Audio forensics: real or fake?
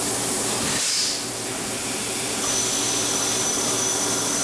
real